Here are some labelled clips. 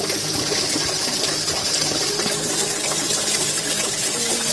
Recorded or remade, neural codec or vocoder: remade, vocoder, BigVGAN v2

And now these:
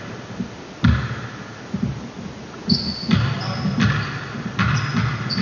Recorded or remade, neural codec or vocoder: recorded